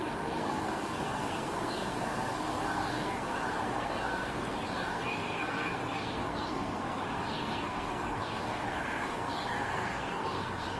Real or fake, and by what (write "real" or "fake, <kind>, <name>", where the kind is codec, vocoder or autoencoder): fake, codec, SNAC